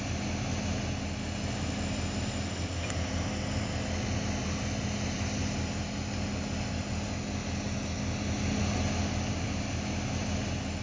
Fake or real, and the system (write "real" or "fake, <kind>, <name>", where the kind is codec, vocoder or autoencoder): real